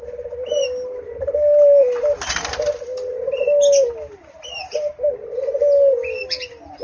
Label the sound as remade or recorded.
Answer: recorded